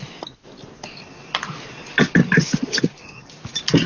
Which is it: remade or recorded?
recorded